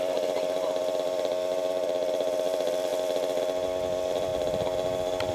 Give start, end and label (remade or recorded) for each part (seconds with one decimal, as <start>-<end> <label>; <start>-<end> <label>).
0.0-2.9 remade; 2.9-3.4 recorded; 3.4-4.3 remade; 4.3-5.3 recorded